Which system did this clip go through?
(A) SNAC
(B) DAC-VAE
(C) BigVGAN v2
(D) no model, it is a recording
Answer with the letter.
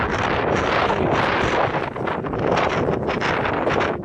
D